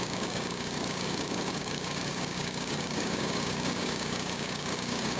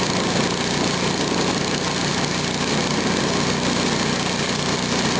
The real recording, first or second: second